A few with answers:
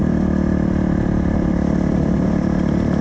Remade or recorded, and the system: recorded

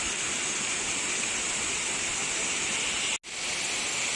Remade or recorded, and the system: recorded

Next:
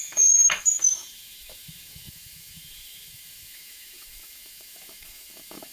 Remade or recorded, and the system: remade, autoencoder, DAC-VAE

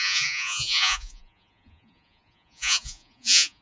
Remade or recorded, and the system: remade, vocoder, Vocos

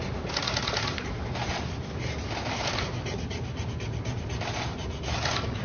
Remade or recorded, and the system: recorded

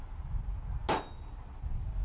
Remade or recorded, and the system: recorded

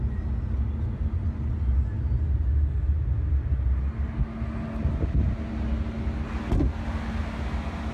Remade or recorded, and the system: recorded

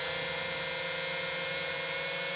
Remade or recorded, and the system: recorded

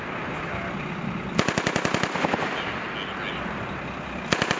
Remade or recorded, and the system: recorded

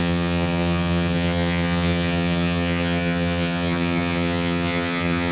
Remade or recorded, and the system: remade, vocoder, HiFi-GAN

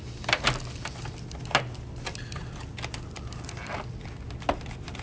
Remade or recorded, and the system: recorded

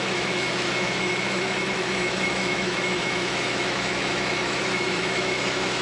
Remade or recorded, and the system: remade, autoencoder, DAC-VAE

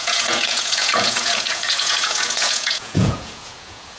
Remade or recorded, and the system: remade, vocoder, Vocos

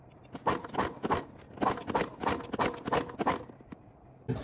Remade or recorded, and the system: recorded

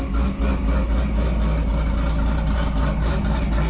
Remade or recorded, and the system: recorded